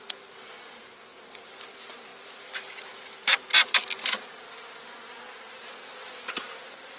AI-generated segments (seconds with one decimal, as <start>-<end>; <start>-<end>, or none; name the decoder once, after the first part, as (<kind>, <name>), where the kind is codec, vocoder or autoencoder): none